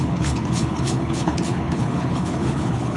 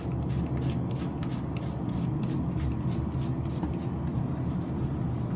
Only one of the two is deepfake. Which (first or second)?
first